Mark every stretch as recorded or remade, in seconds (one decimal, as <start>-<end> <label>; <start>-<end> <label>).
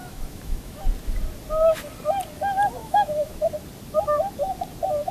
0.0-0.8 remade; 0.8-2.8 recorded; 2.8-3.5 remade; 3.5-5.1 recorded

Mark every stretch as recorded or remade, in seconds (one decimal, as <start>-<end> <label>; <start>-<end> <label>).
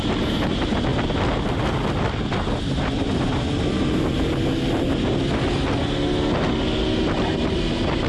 0.0-8.1 recorded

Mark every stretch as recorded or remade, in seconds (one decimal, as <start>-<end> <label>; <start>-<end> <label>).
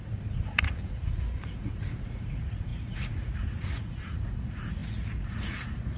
0.0-6.0 remade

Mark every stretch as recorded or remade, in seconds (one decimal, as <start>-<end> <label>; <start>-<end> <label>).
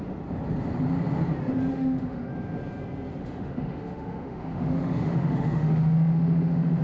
0.0-1.7 recorded; 1.7-2.3 remade; 2.3-3.2 recorded; 3.2-6.8 remade